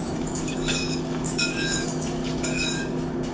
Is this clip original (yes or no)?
no